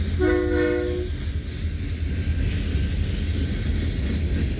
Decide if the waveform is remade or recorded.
recorded